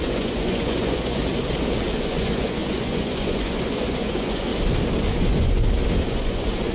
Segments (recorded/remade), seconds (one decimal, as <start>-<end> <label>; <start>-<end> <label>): 0.0-1.2 remade; 1.2-2.0 recorded; 2.0-4.5 remade; 4.5-5.1 recorded; 5.1-5.6 remade; 5.6-6.1 recorded; 6.1-6.7 remade